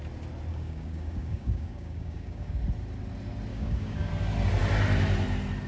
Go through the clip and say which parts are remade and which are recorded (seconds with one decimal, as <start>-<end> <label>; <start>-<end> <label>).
0.0-0.5 recorded; 0.5-2.6 remade; 2.6-3.5 recorded; 3.5-4.1 remade; 4.1-5.7 recorded